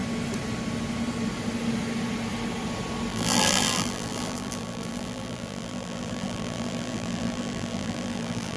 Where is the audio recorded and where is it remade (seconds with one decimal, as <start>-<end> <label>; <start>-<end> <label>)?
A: 0.0-3.1 recorded; 3.1-8.6 remade